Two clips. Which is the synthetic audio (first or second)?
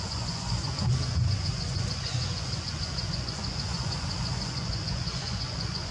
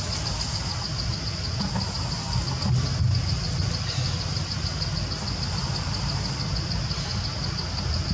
first